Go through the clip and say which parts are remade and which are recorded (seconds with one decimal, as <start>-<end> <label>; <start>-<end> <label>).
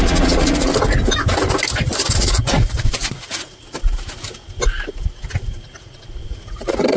0.0-0.7 remade; 0.7-2.1 recorded; 2.1-3.6 remade; 3.6-5.5 recorded; 5.5-7.0 remade